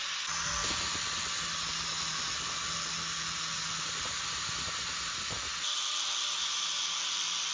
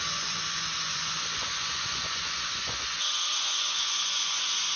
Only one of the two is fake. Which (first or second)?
second